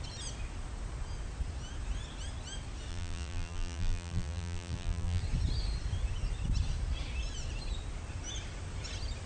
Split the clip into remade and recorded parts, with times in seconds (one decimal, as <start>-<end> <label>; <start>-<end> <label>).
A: 0.0-2.9 recorded; 2.9-5.2 remade; 5.2-9.3 recorded